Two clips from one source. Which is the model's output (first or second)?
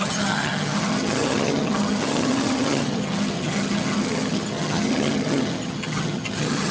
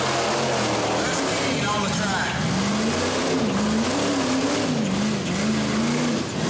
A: first